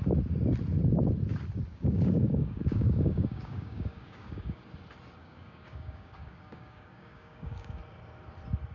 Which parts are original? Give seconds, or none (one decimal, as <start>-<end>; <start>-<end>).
0.0-1.7; 4.6-5.2; 7.8-8.7